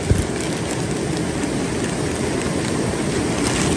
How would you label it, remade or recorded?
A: recorded